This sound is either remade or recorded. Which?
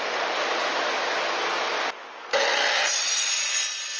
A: recorded